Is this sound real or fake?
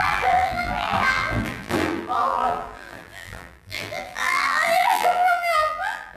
fake